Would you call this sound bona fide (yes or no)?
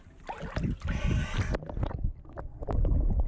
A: yes